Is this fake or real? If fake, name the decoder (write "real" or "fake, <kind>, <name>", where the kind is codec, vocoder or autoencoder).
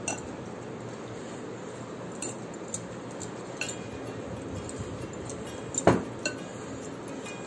real